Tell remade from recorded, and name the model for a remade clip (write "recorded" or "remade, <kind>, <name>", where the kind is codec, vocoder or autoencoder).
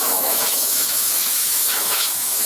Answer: remade, autoencoder, DAC-VAE